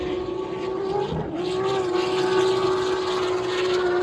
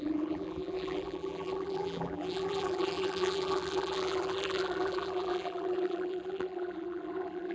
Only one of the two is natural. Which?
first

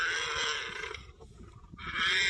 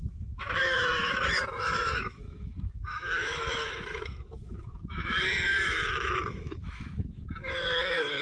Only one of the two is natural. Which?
first